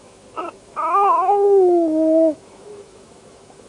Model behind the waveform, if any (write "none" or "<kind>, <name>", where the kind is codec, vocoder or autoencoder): autoencoder, DAC-VAE